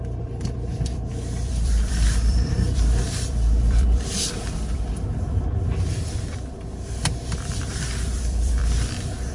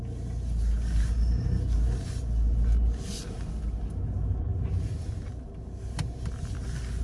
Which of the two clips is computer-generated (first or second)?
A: first